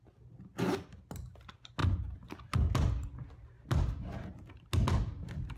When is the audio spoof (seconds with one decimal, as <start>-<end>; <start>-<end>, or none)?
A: none